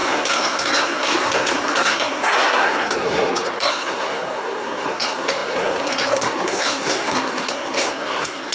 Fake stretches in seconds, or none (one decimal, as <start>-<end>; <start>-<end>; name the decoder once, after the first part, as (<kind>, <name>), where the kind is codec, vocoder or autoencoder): 0.0-8.5 (codec, SNAC)